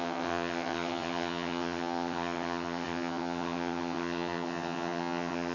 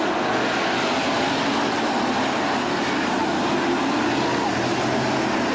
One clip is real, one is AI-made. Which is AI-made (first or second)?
first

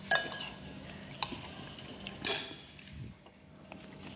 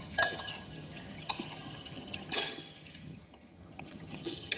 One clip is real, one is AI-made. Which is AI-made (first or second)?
second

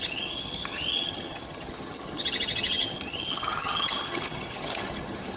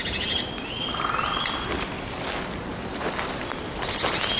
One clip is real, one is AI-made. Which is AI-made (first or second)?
first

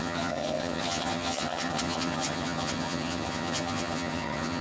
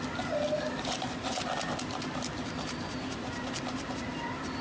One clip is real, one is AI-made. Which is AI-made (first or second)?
first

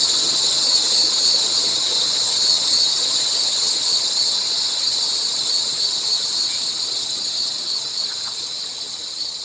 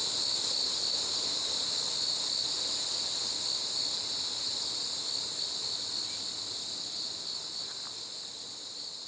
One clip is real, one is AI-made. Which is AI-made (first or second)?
first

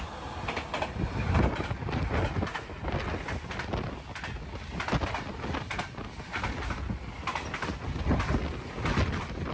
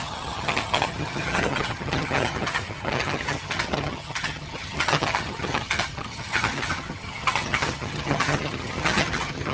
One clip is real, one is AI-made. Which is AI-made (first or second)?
second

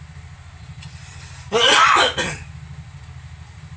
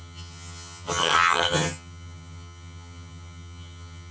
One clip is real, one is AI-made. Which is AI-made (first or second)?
second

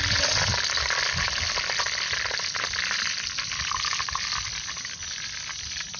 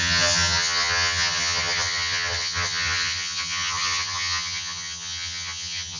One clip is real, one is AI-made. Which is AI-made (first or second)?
second